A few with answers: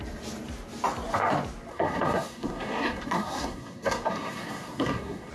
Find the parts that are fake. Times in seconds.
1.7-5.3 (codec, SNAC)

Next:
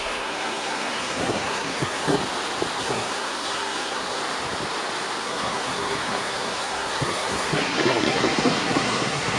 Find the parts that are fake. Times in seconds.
0.0-2.2 (codec, SNAC); 2.8-4.2; 5.2-9.4

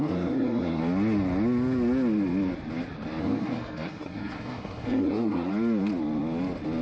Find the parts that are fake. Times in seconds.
0.0-0.8 (codec, SNAC); 3.2-5.5

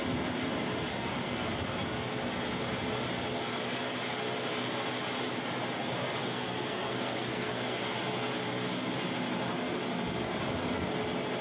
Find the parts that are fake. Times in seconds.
0.9-1.5 (codec, SNAC); 6.2-8.0

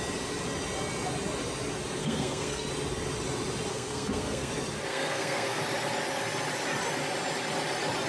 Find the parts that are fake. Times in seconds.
2.0-2.7 (codec, SNAC); 3.7-4.5; 4.9-5.6

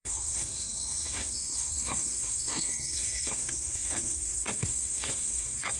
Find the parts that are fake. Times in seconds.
0.0-5.8 (codec, SNAC)